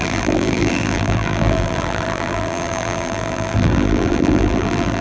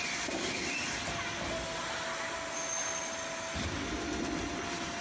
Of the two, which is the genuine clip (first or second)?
second